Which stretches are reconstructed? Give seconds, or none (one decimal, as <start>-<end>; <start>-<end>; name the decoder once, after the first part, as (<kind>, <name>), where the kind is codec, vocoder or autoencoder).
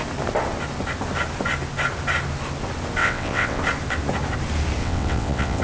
3.0-3.6 (vocoder, WaveNeXt); 4.8-5.6